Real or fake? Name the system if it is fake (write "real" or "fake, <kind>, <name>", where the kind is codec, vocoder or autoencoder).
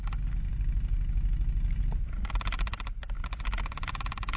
real